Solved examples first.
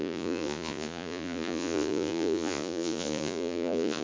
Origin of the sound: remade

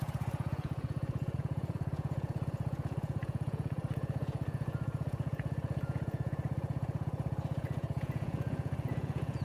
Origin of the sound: remade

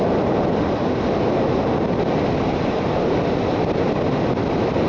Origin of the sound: recorded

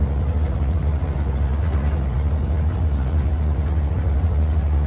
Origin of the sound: remade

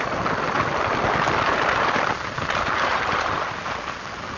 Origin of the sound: recorded